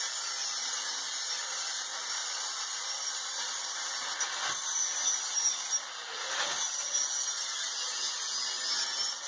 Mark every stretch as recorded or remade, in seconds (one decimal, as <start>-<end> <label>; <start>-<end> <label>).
0.0-1.9 recorded; 1.9-5.9 remade; 5.9-9.3 recorded